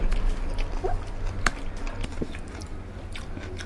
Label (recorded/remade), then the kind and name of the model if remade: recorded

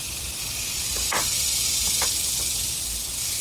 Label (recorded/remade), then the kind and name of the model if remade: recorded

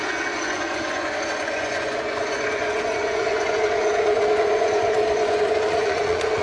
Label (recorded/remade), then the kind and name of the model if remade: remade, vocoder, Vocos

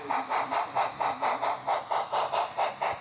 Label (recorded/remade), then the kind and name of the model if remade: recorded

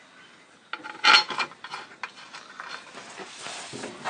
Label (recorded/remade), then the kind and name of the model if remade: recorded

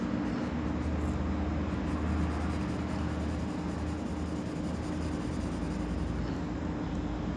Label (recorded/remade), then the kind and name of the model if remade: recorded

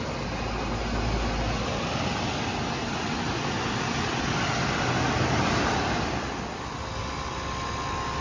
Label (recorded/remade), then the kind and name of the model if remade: recorded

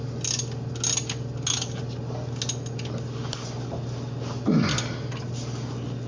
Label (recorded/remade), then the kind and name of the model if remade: recorded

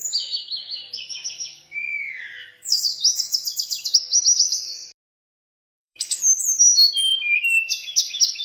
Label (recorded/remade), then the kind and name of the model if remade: remade, codec, DAC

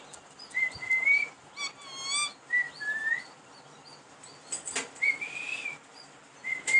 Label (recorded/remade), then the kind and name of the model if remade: recorded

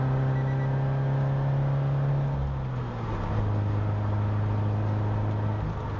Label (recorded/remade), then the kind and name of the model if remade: recorded